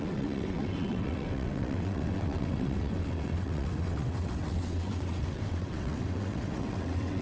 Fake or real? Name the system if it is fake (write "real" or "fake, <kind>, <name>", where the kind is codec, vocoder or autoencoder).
fake, vocoder, WaveNeXt